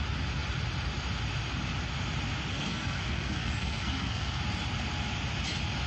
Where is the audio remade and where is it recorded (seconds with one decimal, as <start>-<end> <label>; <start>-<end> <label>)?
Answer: 0.0-2.5 recorded; 2.5-4.4 remade; 4.4-5.9 recorded